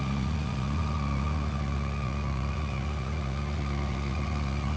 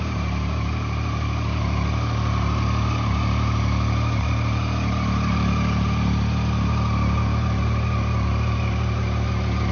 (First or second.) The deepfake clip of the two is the first